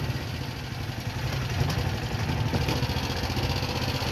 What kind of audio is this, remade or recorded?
recorded